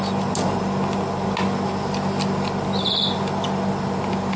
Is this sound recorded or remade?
recorded